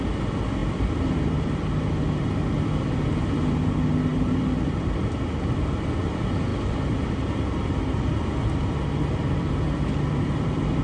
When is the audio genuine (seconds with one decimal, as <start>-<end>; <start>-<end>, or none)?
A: none